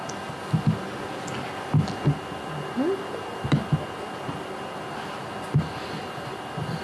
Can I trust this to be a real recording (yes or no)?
yes